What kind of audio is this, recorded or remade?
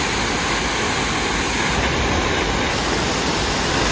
recorded